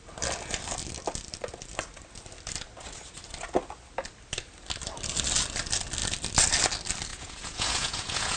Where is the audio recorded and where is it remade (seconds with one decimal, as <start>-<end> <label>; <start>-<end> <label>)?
0.0-7.1 recorded; 7.1-8.4 remade